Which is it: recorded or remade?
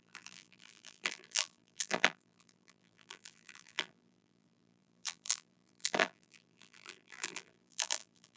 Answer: remade